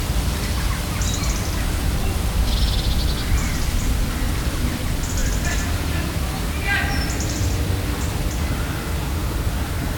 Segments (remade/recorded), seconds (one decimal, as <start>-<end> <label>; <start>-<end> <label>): 0.0-5.2 recorded; 5.2-6.5 remade; 6.5-10.0 recorded